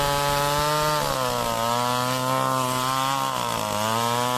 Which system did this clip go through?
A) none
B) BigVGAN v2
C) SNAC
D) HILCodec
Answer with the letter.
A